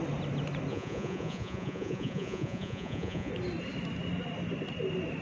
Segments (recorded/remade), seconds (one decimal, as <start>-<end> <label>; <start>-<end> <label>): 0.0-0.7 recorded; 0.7-3.3 remade; 3.3-5.2 recorded